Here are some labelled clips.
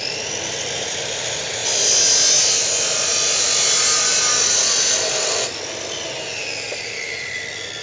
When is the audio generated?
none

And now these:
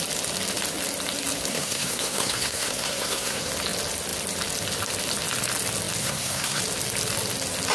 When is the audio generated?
1.5-3.5 (codec, SNAC); 6.0-6.6

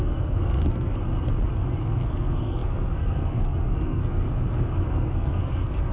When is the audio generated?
0.0-1.0 (codec, SNAC); 1.8-5.9